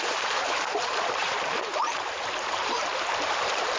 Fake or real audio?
fake